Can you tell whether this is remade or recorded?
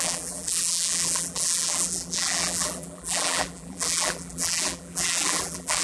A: remade